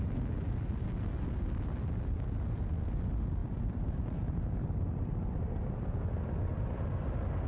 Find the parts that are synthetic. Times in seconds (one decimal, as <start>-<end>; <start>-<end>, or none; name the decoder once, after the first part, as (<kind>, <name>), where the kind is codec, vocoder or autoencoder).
none

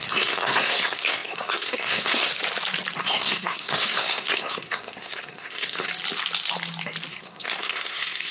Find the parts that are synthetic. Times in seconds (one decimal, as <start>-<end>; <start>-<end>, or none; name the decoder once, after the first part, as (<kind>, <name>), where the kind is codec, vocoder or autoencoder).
0.0-2.3 (codec, SNAC); 3.0-5.9; 7.1-8.3

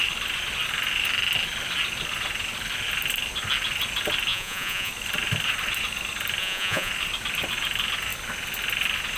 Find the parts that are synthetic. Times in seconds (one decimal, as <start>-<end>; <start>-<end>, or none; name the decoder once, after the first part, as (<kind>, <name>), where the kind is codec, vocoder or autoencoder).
4.3-4.9 (vocoder, Vocos); 6.4-6.9

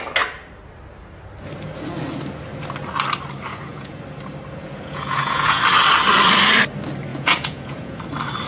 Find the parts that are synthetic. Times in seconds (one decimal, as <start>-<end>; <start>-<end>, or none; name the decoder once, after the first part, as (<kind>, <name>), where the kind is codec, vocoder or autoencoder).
3.5-4.0 (vocoder, Vocos); 4.6-5.6; 7.1-8.0

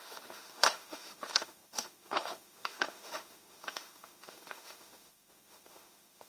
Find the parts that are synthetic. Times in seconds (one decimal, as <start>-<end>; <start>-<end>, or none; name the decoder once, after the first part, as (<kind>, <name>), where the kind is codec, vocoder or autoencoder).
0.0-6.3 (autoencoder, DAC-VAE)

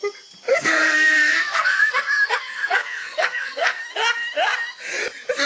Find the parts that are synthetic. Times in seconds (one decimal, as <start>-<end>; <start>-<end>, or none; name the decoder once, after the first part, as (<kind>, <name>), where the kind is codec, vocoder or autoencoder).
0.5-3.8 (codec, SNAC)

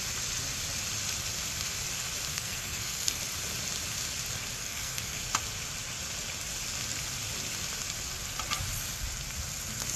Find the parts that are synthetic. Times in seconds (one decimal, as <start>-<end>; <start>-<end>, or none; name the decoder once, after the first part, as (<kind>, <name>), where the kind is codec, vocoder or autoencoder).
2.3-3.2 (codec, SNAC); 4.6-5.2